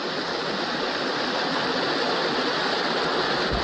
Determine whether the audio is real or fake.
real